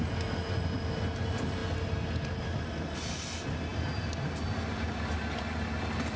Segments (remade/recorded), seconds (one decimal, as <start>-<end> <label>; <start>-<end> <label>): 0.0-6.2 recorded